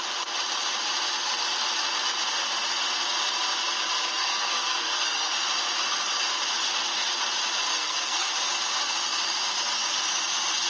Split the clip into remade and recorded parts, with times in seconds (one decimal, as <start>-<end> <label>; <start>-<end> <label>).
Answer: 0.0-4.2 recorded; 4.2-5.3 remade; 5.3-7.7 recorded; 7.7-8.3 remade; 8.3-10.7 recorded